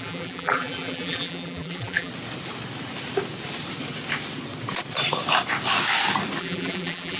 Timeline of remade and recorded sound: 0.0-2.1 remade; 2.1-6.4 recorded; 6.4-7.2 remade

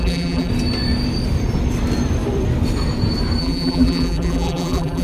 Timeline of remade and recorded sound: 0.0-0.5 remade; 0.5-3.4 recorded; 3.4-5.0 remade

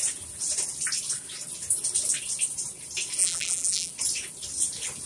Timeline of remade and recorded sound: 0.0-3.2 recorded; 3.2-3.9 remade; 3.9-5.1 recorded

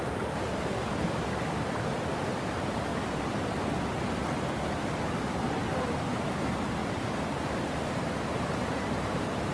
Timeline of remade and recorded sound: 0.0-2.9 remade; 2.9-5.2 recorded; 5.2-6.8 remade; 6.8-7.5 recorded; 7.5-9.5 remade

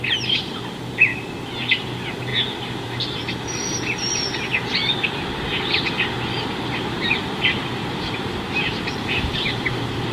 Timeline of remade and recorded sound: 0.0-7.8 recorded; 7.8-8.8 remade; 8.8-10.1 recorded